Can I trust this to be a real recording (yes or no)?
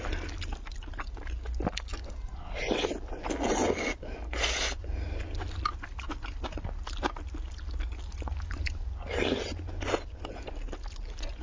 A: yes